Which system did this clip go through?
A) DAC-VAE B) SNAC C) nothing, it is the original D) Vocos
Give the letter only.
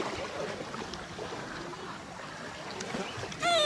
C